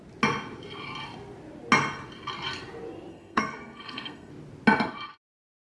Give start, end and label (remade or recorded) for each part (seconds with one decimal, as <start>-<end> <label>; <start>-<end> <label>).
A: 0.0-3.1 recorded; 3.1-4.3 remade; 4.3-5.7 recorded